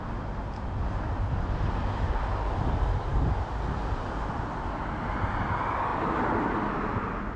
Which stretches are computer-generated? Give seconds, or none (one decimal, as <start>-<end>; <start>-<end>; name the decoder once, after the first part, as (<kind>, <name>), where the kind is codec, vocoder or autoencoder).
none